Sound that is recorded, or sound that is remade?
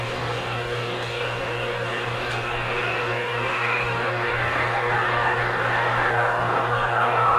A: remade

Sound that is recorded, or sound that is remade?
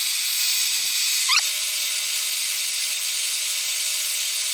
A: recorded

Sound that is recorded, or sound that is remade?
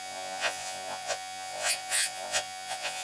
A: remade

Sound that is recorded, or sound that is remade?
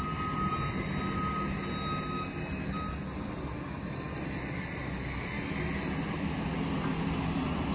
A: recorded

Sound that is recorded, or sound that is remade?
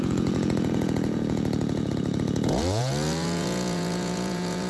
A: remade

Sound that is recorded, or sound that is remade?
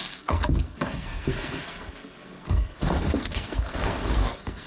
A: remade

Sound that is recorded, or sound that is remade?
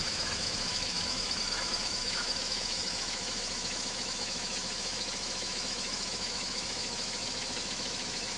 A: remade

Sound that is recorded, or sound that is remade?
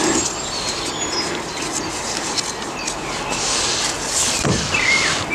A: recorded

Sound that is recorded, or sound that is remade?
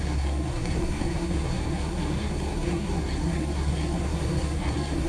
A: remade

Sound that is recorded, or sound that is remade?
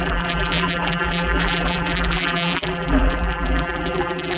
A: remade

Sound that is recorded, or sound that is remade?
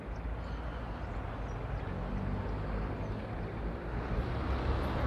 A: recorded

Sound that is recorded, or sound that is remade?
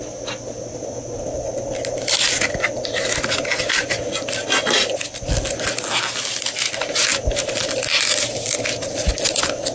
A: recorded